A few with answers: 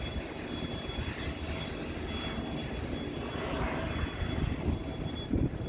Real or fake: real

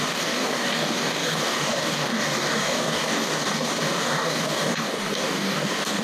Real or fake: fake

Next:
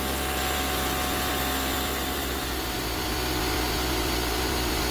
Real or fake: real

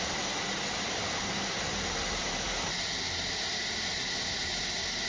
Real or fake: real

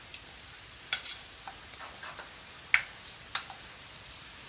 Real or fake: real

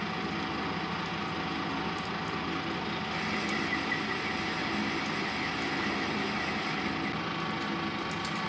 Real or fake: real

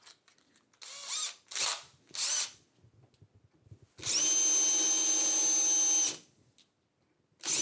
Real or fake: real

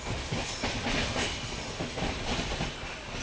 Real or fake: real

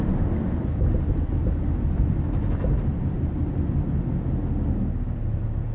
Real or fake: real